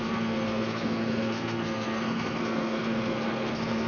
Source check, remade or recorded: remade